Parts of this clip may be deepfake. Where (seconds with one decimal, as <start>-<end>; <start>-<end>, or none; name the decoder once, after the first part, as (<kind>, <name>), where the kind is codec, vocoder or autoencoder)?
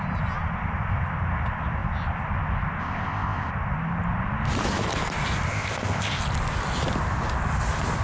2.8-3.5 (codec, ZipCodec); 5.5-6.2